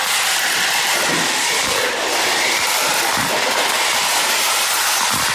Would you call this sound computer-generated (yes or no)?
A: no